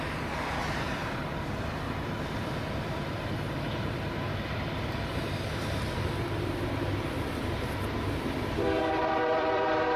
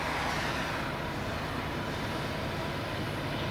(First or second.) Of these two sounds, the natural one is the second